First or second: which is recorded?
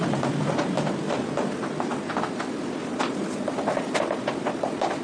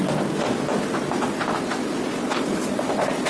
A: second